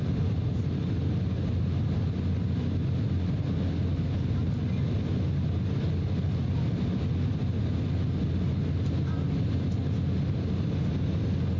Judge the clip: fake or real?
real